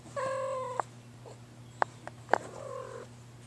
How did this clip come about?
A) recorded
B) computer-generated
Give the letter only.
A